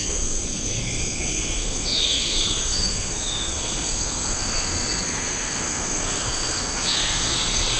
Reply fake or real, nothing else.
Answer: fake